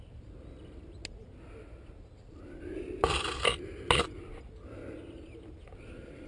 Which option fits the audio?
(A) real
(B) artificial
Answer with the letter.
A